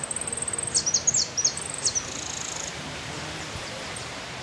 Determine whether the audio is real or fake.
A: real